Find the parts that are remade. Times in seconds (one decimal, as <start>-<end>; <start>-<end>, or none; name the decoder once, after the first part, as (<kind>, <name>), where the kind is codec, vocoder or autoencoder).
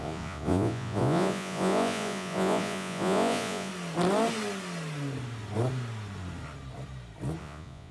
0.0-3.7 (vocoder, Vocos); 7.4-7.9